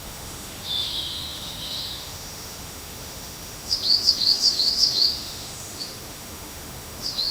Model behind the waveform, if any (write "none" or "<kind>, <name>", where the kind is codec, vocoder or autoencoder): autoencoder, DAC-VAE